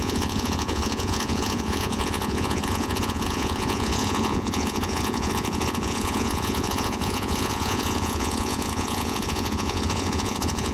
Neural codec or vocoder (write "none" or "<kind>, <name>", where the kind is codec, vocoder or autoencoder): vocoder, Vocos